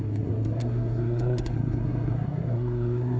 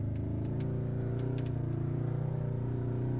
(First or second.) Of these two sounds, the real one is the second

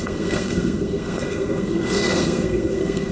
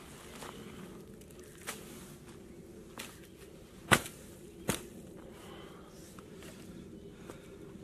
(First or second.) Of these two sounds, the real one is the second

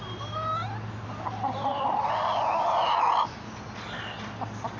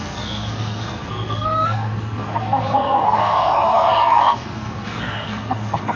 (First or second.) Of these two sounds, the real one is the first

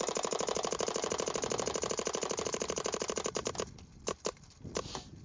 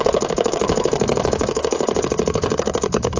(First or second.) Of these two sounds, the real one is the first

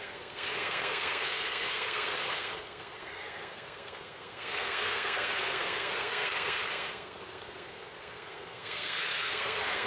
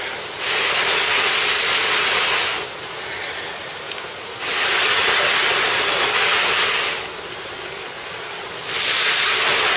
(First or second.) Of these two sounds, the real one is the second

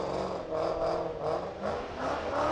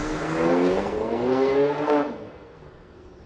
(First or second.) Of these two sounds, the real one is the first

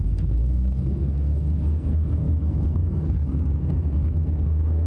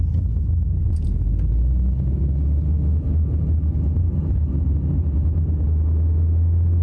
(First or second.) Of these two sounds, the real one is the second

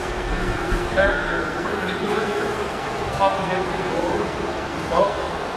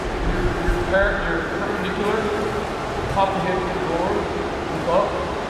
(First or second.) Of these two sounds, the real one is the second